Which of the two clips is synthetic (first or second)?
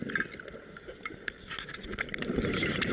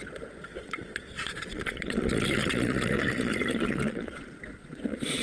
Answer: second